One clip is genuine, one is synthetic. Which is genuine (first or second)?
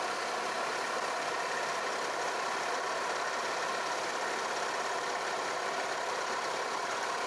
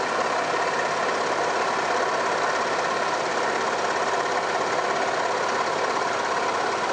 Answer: second